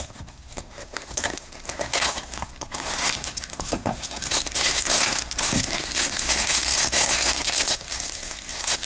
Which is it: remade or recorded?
remade